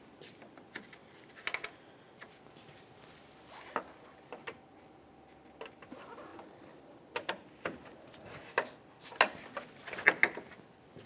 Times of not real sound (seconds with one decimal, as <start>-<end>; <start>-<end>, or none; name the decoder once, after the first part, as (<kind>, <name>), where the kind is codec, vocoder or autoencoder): none